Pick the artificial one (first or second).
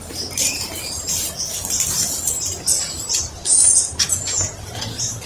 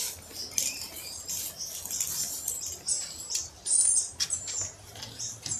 first